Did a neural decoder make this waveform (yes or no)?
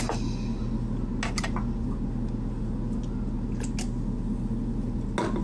no